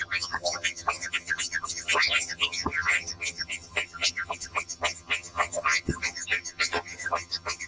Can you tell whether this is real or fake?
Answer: fake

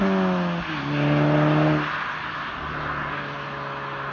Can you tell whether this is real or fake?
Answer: real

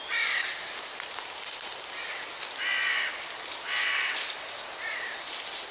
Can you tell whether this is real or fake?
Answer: real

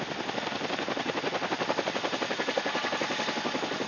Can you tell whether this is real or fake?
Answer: real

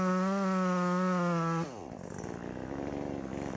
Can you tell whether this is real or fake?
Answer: real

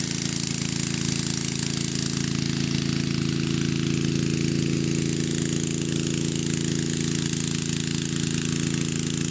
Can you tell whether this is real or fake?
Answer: real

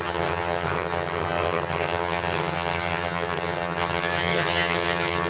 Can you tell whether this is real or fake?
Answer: fake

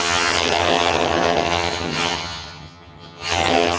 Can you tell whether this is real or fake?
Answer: fake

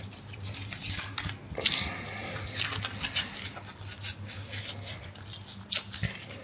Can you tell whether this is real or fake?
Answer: real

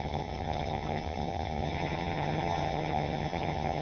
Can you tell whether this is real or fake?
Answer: fake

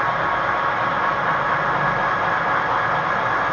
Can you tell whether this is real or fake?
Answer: real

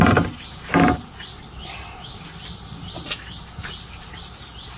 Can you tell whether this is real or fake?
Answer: real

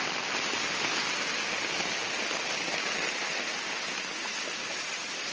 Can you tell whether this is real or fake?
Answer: real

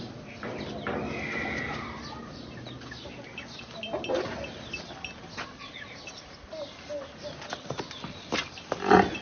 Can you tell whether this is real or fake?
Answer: real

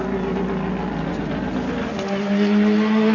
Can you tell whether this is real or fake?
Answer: real